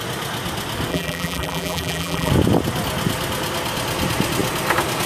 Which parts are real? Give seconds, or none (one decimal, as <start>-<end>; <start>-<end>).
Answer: 0.0-0.9; 2.3-5.1